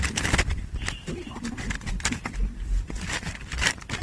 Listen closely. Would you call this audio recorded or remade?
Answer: recorded